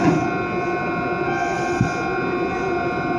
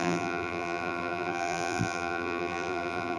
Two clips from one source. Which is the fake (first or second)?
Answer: second